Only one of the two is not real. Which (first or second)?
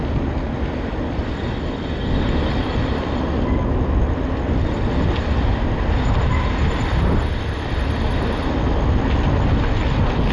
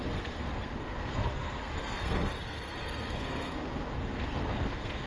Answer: second